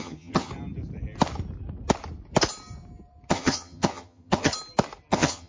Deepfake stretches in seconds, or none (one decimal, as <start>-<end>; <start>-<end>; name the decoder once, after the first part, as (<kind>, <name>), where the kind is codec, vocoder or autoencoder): 0.0-0.5 (vocoder, HiFi-GAN); 3.3-4.5; 5.1-5.5